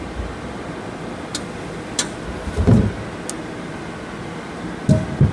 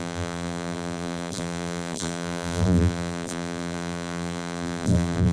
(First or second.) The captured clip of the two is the first